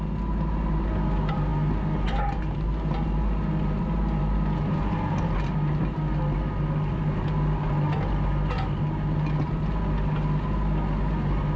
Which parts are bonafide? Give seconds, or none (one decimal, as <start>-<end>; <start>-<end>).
0.0-11.6